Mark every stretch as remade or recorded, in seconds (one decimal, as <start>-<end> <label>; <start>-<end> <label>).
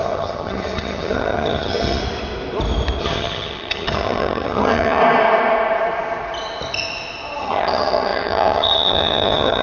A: 0.0-2.0 remade; 2.0-3.0 recorded; 3.0-5.0 remade; 5.0-7.4 recorded; 7.4-9.6 remade